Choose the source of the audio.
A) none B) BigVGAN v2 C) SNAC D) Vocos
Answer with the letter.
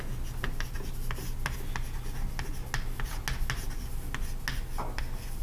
A